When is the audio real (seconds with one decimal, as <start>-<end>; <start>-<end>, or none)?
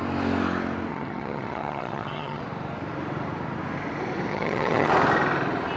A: 0.0-0.9; 2.4-4.3; 4.9-5.8